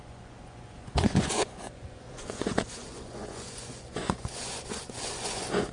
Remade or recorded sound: remade